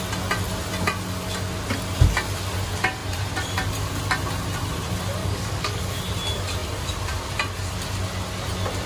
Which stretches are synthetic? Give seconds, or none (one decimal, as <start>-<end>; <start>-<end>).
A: 5.2-6.0